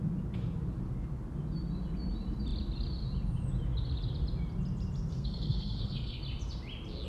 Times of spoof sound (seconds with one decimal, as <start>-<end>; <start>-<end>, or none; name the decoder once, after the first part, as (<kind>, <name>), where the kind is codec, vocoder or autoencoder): 5.1-6.2 (codec, SNAC)